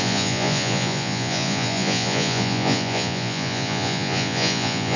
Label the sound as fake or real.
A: fake